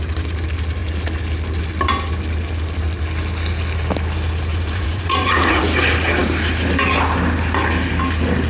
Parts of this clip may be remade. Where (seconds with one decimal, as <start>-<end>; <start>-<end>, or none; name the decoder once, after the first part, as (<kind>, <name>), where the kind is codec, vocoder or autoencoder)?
4.5-5.6 (vocoder, Vocos)